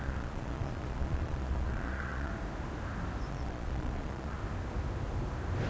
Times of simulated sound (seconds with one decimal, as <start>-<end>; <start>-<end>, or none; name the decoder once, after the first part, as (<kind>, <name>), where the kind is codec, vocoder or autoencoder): 0.0-2.3 (vocoder, Vocos); 3.3-4.4